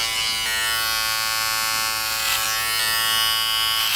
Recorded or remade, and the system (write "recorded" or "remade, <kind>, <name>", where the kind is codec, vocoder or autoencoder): recorded